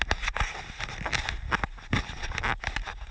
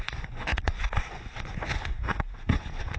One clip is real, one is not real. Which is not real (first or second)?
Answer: second